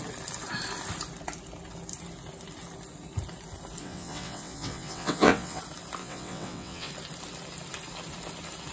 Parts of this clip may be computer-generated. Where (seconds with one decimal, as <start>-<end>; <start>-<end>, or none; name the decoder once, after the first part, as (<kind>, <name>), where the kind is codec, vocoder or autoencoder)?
3.8-5.6 (vocoder, WaveNeXt); 6.0-6.9